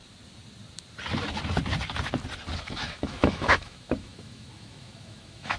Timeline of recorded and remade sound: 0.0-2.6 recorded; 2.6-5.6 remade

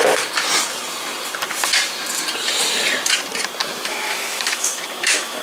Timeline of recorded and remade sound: 0.0-3.6 recorded; 3.6-5.4 remade

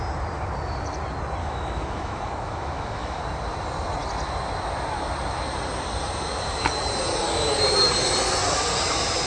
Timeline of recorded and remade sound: 0.0-1.4 recorded; 1.4-3.2 remade; 3.2-9.3 recorded

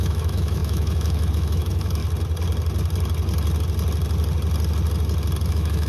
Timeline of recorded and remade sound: 0.0-2.0 remade; 2.0-5.5 recorded; 5.5-5.9 remade

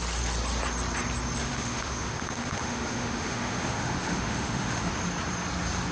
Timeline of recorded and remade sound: 0.0-1.4 recorded; 1.4-4.9 remade; 4.9-5.9 recorded

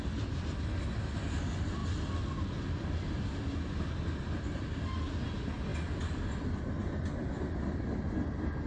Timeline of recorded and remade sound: 0.0-8.7 recorded

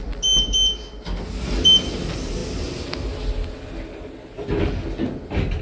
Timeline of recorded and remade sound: 0.0-5.6 recorded